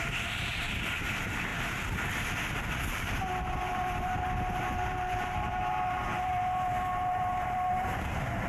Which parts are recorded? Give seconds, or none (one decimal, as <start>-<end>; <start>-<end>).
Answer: 1.5-2.9